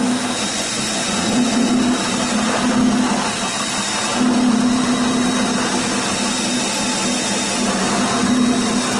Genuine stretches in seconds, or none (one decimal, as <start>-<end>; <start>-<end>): 0.0-0.5; 1.7-9.0